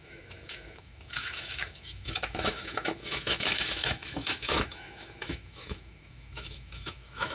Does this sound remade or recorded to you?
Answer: remade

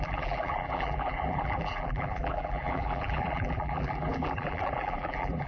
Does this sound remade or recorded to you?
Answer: remade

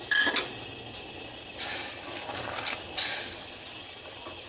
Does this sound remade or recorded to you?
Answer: recorded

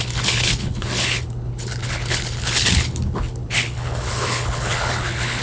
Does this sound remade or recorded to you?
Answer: remade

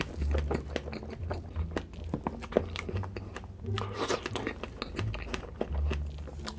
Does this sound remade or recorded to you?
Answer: recorded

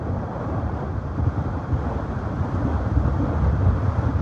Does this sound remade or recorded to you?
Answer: recorded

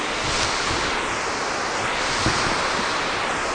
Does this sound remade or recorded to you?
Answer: recorded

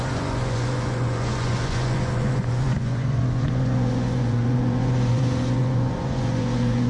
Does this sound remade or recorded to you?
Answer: remade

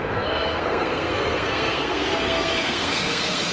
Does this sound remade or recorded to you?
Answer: remade